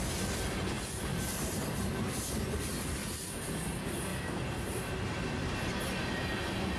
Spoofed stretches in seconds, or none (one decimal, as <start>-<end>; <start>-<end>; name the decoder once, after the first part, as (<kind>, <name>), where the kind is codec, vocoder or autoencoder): 1.1-2.3 (vocoder, BigVGAN v2); 3.0-3.5; 4.1-4.9